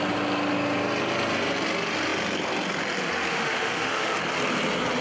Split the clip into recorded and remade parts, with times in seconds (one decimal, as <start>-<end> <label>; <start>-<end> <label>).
0.0-3.3 recorded; 3.3-4.2 remade; 4.2-5.0 recorded

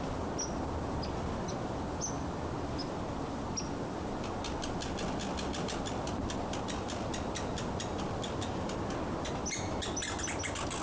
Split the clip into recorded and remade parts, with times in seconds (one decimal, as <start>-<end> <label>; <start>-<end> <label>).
0.0-10.8 recorded

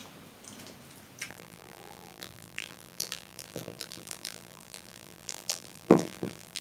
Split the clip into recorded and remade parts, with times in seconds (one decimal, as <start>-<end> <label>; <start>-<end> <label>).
0.0-1.3 recorded; 1.3-6.6 remade

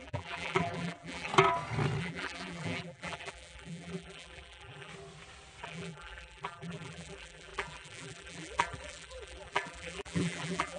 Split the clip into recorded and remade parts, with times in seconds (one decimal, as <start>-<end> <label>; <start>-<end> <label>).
0.0-1.3 remade; 1.3-2.0 recorded; 2.0-4.9 remade; 4.9-5.6 recorded; 5.6-10.8 remade

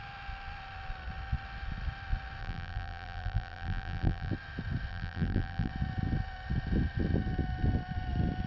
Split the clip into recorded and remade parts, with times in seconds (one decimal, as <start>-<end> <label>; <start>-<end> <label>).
0.0-2.4 recorded; 2.4-4.3 remade; 4.3-4.9 recorded; 4.9-5.7 remade; 5.7-8.5 recorded